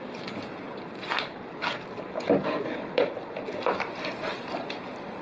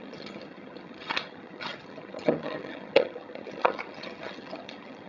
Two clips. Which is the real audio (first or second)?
first